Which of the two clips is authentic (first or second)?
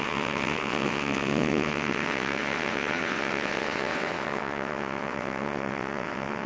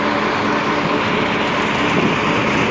second